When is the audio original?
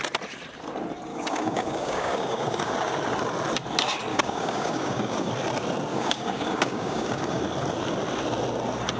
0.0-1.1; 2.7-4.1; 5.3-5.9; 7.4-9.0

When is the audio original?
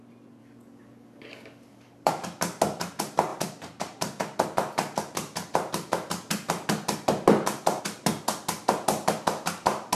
0.0-0.4; 2.1-9.9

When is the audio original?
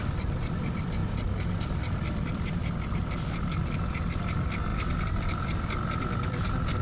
0.0-6.8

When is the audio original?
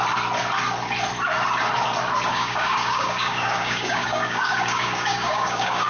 0.0-2.3